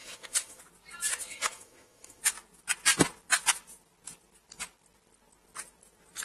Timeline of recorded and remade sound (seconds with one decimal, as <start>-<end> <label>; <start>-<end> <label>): 0.0-0.6 remade; 0.6-1.1 recorded; 1.1-2.2 remade; 2.2-6.2 recorded